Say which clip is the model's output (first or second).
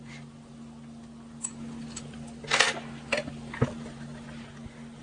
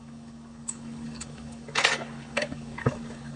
second